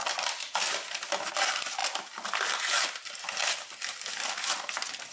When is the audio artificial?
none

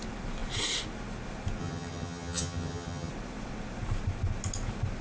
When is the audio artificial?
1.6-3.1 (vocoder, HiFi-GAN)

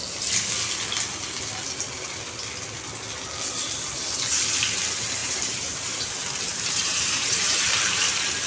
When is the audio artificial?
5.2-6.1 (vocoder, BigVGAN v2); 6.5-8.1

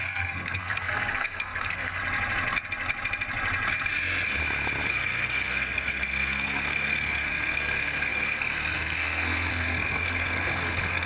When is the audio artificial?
0.0-2.0 (codec, SNAC); 4.9-11.1

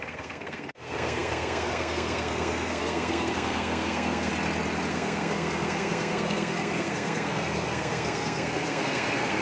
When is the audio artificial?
0.0-4.3 (codec, SNAC); 4.9-9.4

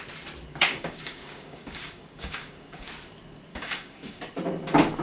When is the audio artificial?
0.5-2.9 (codec, DAC); 3.5-4.2

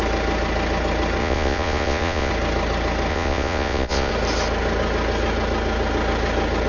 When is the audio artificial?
1.2-2.3 (vocoder, Vocos); 3.1-4.1

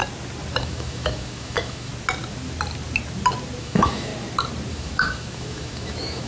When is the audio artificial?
0.6-1.9 (autoencoder, DAC-VAE); 3.6-4.1; 4.7-6.3